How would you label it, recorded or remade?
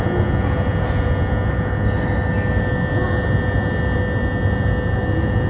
recorded